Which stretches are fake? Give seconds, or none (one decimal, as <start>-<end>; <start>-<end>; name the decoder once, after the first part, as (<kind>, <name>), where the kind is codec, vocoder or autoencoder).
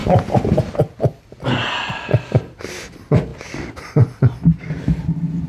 3.3-4.6 (vocoder, BigVGAN v2)